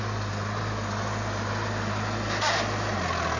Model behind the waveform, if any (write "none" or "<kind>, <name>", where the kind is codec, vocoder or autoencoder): none